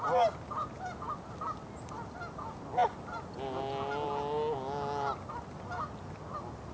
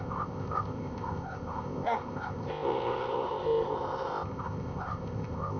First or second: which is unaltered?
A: first